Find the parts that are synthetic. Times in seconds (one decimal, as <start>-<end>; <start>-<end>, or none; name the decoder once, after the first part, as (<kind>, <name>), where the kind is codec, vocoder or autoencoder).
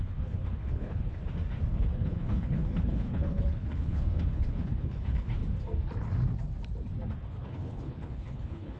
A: 0.0-1.2 (codec, HILCodec); 1.7-5.4; 7.3-8.8